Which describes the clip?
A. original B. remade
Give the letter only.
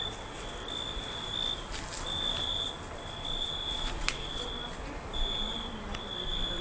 A